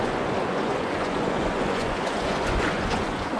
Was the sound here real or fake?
fake